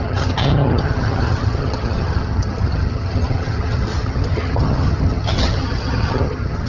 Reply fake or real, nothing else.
fake